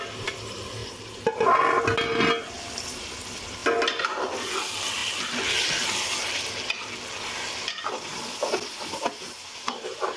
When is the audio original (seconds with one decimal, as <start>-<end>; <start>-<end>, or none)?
0.8-2.5; 3.6-4.5; 8.1-9.4